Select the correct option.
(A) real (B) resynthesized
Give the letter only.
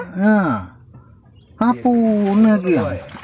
A